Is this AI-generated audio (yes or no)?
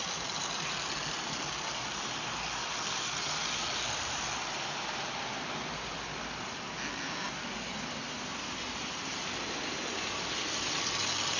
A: no